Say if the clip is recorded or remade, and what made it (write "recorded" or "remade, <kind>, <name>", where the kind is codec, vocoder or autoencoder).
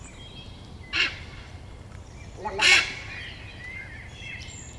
remade, vocoder, BigVGAN v2